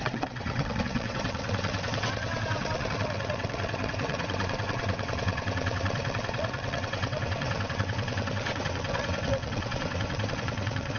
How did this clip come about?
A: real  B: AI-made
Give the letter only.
B